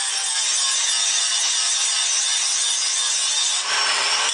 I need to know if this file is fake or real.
real